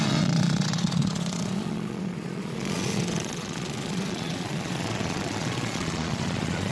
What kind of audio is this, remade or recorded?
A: remade